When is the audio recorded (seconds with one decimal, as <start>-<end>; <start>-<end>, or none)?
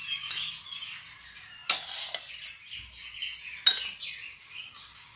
0.5-4.4